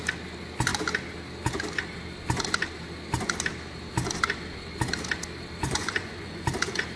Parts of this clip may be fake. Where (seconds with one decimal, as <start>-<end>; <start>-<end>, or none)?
5.6-6.5

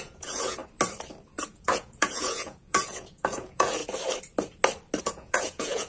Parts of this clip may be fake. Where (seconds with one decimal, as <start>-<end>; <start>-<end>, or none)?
0.0-0.6; 1.5-3.8; 5.0-5.9